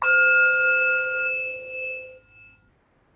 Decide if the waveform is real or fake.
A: real